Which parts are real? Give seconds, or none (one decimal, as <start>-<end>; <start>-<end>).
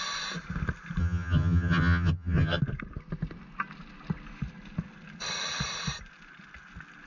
0.0-1.0; 2.6-7.1